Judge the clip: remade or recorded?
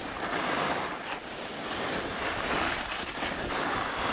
recorded